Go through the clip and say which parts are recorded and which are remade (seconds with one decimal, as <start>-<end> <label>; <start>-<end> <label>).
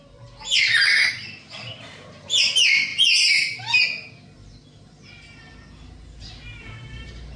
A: 0.0-7.4 recorded